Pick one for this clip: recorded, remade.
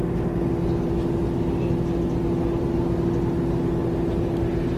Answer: recorded